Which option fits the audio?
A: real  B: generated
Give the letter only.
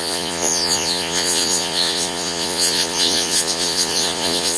B